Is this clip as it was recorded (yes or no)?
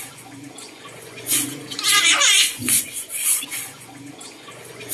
no